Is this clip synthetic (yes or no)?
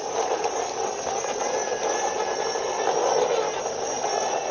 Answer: no